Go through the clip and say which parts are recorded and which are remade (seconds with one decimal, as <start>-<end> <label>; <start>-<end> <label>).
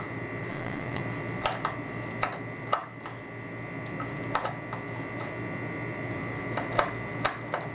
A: 0.0-0.5 recorded; 0.5-1.0 remade; 1.0-7.7 recorded